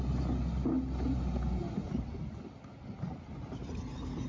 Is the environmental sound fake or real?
real